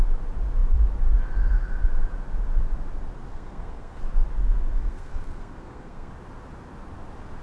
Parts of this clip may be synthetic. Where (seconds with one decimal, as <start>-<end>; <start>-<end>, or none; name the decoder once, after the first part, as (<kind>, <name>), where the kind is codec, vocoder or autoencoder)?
3.3-4.0 (codec, SNAC); 4.4-6.1